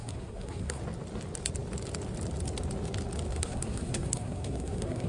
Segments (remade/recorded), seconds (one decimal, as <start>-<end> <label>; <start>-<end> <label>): 0.0-0.8 remade; 0.8-3.3 recorded; 3.3-5.1 remade